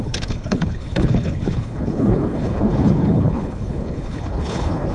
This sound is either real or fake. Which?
fake